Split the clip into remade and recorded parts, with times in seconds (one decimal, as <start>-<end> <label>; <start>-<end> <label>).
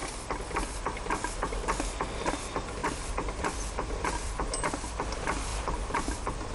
0.0-2.8 recorded; 2.8-4.6 remade; 4.6-5.5 recorded; 5.5-6.1 remade; 6.1-6.5 recorded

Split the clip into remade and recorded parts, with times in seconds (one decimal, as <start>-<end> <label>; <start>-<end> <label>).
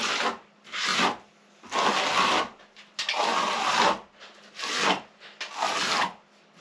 0.0-6.6 recorded